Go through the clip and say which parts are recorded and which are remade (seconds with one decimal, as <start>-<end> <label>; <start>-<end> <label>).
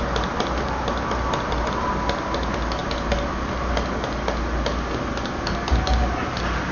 0.0-6.7 recorded